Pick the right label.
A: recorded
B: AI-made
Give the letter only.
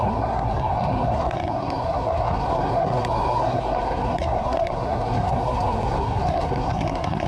B